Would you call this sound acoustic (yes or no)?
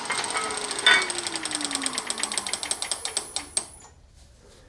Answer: yes